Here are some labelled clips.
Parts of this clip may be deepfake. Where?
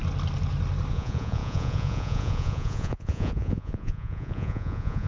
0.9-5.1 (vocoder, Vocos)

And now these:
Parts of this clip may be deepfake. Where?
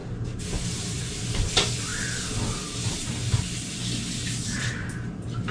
0.0-1.2 (vocoder, BigVGAN v2); 1.9-3.8; 4.2-5.5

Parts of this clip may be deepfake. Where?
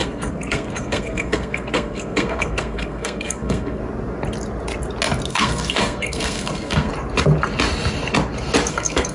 0.0-3.8 (codec, SNAC); 5.3-6.9; 8.7-9.1